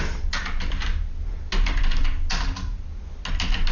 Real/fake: real